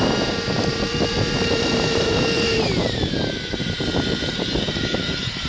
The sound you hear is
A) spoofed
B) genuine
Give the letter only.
A